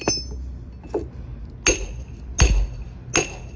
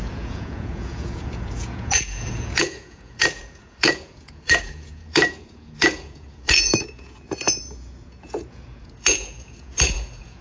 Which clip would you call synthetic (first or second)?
second